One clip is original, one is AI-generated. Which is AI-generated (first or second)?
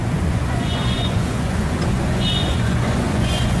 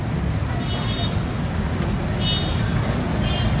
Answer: first